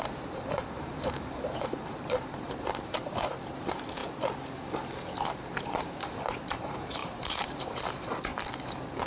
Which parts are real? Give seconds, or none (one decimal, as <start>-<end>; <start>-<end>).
4.0-5.6; 8.3-9.1